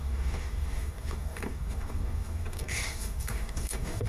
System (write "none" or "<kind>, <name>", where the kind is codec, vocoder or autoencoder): codec, DAC